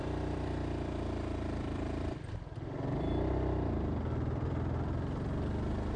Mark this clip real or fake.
fake